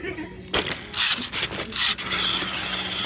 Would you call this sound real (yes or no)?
yes